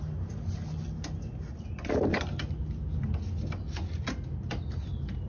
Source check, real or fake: real